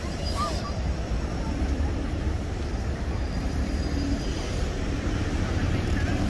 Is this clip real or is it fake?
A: fake